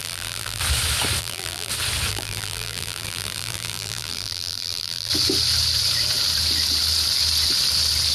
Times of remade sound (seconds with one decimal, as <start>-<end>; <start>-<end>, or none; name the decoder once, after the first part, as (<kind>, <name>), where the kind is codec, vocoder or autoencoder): 0.0-0.6 (vocoder, BigVGAN v2); 1.2-1.7; 2.1-5.1